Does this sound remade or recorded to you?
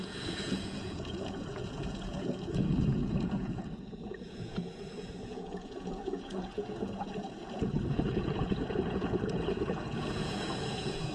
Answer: remade